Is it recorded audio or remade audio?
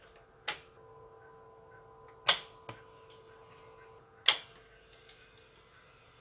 recorded